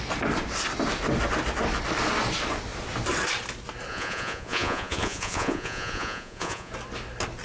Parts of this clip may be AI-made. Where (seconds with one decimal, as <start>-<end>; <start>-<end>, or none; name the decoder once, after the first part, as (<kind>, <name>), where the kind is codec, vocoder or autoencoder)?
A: 3.9-6.7 (vocoder, Vocos)